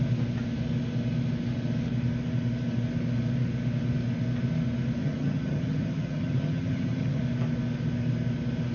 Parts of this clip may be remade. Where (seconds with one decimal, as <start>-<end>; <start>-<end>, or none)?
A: 5.0-7.2

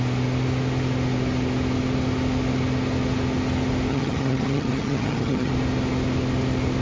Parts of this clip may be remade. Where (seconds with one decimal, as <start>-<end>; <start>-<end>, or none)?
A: 3.9-5.5

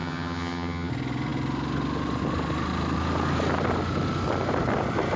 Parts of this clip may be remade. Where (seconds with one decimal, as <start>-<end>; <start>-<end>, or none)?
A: 0.0-0.9

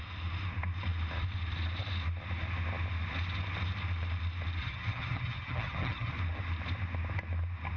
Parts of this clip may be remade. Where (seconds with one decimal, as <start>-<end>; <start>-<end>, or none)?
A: 4.6-6.1

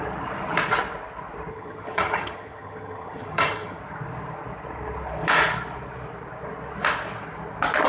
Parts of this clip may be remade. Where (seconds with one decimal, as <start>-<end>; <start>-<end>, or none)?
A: 1.5-3.8

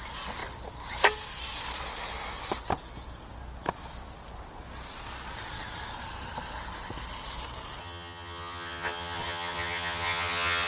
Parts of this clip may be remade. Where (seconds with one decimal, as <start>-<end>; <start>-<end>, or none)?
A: 7.8-10.7